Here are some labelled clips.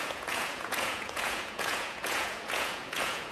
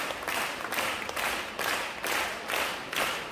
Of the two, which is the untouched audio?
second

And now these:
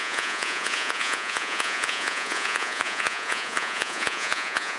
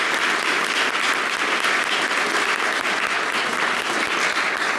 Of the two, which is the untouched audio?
second